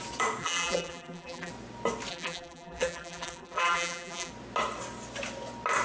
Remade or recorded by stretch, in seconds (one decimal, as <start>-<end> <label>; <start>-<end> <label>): 0.0-0.4 recorded; 0.4-1.5 remade; 1.5-2.1 recorded; 2.1-4.3 remade; 4.3-5.8 recorded